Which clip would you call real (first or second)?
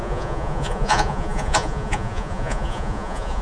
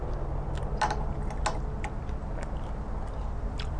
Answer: second